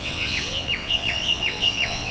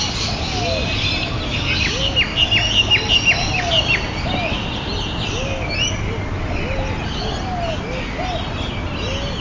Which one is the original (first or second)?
second